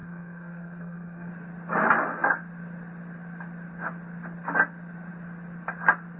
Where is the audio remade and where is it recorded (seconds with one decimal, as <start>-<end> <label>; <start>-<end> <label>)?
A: 0.0-1.3 remade; 1.3-6.2 recorded